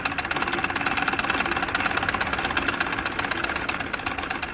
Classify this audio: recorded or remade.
recorded